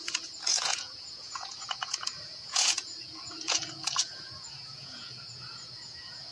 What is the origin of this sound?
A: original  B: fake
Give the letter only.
B